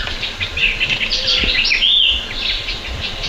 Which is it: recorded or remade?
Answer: recorded